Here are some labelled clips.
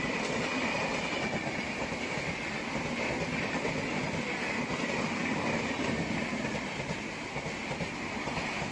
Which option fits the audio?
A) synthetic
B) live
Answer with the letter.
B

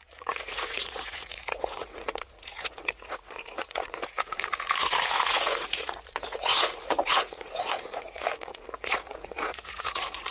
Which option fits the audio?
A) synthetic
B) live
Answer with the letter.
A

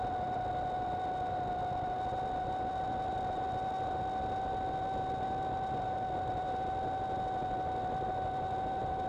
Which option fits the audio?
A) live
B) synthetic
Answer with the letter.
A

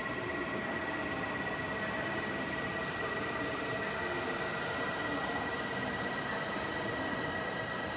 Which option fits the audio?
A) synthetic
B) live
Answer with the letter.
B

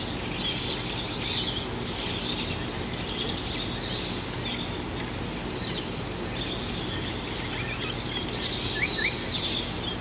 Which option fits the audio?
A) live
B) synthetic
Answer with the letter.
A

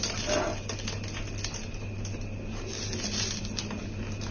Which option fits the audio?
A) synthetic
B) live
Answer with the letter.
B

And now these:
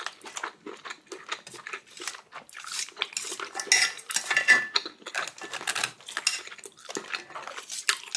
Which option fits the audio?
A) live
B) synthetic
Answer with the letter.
A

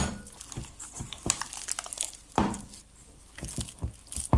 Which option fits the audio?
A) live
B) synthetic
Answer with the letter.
A